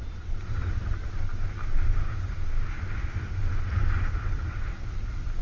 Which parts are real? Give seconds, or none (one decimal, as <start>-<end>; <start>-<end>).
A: 0.0-4.2; 4.8-5.4